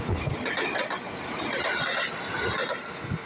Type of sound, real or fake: real